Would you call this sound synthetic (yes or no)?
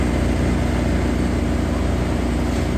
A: no